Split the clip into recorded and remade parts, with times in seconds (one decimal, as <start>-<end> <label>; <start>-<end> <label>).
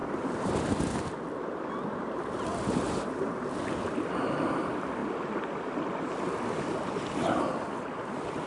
0.0-0.6 remade; 0.6-2.5 recorded; 2.5-3.3 remade; 3.3-8.5 recorded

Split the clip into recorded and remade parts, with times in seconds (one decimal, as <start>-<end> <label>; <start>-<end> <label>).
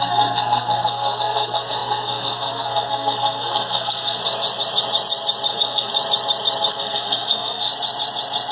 0.0-4.2 remade; 4.2-5.5 recorded; 5.5-5.9 remade; 5.9-6.7 recorded; 6.7-7.7 remade; 7.7-8.5 recorded